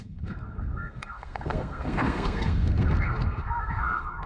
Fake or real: fake